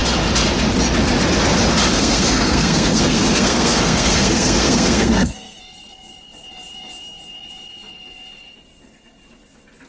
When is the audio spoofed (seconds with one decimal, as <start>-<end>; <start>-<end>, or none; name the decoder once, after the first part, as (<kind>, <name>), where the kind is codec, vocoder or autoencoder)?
1.9-5.6 (codec, SNAC)